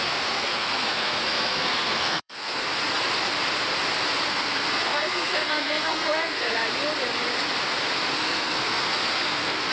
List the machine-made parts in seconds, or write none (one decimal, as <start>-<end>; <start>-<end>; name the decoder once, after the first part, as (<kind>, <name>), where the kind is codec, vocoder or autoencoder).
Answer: 0.0-2.6 (codec, SNAC); 4.3-6.6; 8.1-9.7